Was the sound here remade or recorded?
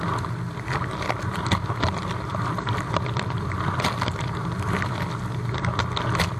recorded